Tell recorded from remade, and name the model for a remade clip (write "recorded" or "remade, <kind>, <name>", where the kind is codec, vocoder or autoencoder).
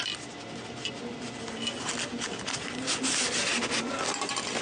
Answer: recorded